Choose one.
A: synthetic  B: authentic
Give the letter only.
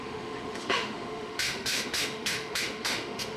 A